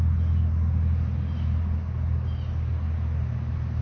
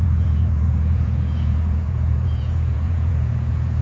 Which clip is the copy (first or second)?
second